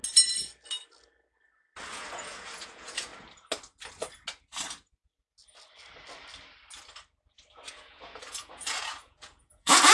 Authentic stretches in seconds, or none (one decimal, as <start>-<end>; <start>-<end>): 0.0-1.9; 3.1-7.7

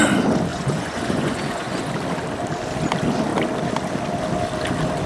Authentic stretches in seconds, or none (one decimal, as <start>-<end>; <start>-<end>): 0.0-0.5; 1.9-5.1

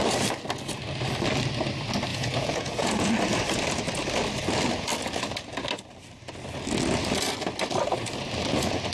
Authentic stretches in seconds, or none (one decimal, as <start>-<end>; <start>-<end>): 0.0-2.1; 3.1-8.9

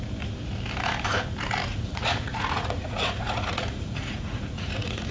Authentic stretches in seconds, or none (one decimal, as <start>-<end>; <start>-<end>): 0.0-1.7

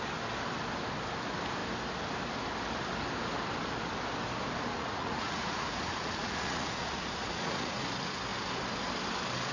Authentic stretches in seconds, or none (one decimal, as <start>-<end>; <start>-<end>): 0.0-4.7; 7.8-9.5